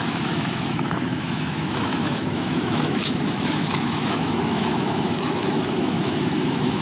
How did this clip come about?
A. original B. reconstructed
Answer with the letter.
B